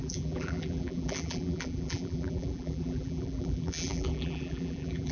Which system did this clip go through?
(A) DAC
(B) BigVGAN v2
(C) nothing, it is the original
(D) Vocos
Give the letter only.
B